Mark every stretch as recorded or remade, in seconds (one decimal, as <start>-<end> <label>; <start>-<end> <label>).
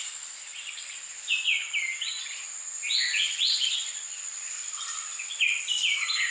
0.0-6.3 recorded